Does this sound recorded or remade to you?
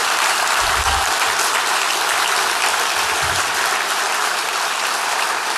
remade